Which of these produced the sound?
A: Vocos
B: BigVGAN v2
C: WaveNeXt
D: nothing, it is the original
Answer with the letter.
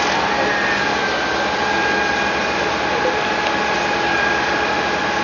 D